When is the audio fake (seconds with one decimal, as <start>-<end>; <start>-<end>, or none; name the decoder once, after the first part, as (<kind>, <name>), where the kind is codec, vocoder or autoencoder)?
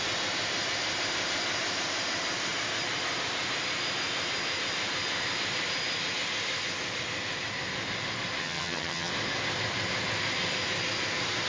8.4-9.1 (vocoder, HiFi-GAN)